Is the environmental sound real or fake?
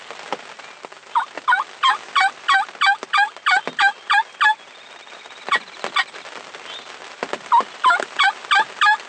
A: real